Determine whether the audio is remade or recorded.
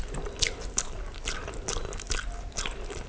recorded